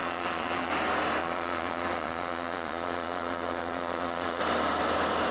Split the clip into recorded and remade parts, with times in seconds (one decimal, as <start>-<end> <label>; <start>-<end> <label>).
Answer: 0.0-0.7 remade; 0.7-1.2 recorded; 1.2-4.4 remade; 4.4-5.3 recorded